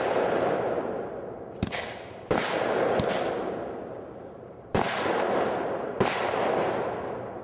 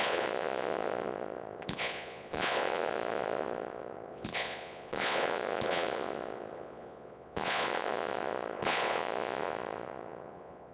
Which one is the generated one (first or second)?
second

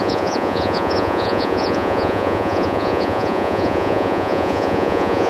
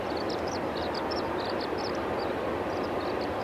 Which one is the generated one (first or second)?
first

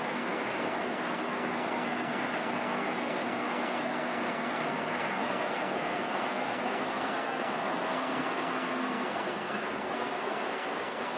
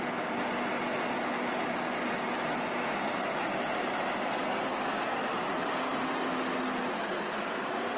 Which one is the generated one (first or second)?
first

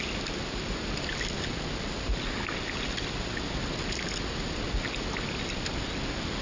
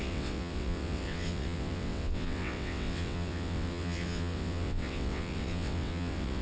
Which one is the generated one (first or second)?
second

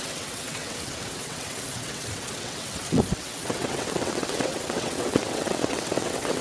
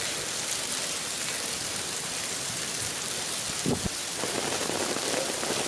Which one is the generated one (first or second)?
first